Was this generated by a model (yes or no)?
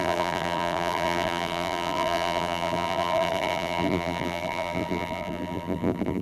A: yes